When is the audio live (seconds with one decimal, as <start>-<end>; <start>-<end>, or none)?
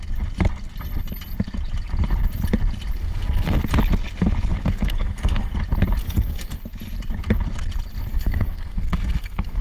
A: 0.0-3.0; 3.6-4.6; 5.5-6.0; 6.6-8.1